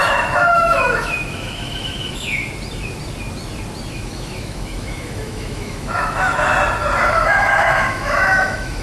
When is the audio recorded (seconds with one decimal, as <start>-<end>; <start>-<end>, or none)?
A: 2.4-3.9; 6.5-7.1